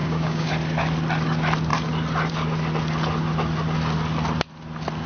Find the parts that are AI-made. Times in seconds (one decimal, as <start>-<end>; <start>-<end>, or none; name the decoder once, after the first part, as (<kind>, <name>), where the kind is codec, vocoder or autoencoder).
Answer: 0.0-0.5 (codec, DAC)